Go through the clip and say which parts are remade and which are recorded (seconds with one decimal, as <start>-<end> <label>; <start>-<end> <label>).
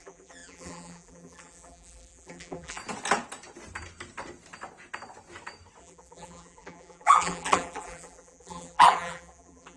0.0-2.8 remade; 2.8-5.8 recorded; 5.8-9.8 remade